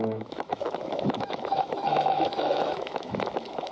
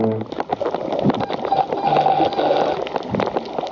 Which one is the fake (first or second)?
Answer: first